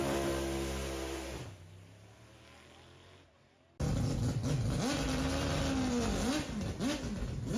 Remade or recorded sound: recorded